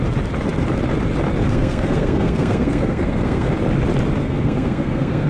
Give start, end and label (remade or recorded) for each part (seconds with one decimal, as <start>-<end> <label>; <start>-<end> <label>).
0.0-1.5 recorded; 1.5-3.5 remade; 3.5-4.2 recorded; 4.2-5.3 remade